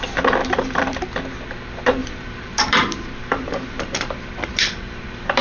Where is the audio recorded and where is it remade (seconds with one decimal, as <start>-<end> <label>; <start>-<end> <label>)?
0.0-0.4 recorded; 0.4-1.1 remade; 1.1-2.0 recorded; 2.0-5.4 remade